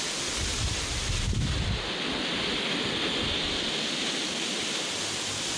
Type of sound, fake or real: real